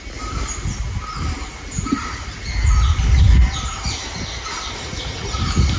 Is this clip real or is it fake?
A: real